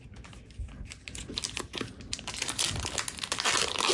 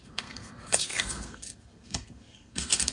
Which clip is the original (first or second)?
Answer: first